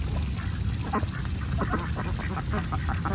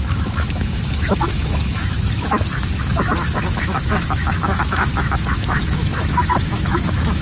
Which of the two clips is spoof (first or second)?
second